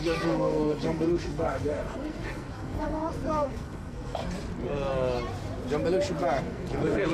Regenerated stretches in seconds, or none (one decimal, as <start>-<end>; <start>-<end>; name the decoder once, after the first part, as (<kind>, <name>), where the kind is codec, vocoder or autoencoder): 0.0-4.2 (codec, SNAC); 6.4-7.1